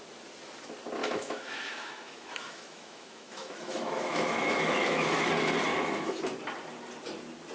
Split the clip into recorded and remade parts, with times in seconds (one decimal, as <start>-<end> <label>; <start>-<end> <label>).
0.0-1.0 recorded; 1.0-5.3 remade; 5.3-5.7 recorded; 5.7-6.2 remade; 6.2-7.5 recorded